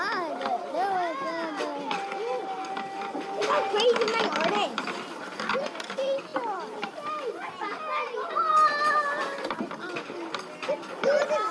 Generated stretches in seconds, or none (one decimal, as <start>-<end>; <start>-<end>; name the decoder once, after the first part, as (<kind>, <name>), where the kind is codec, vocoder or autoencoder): none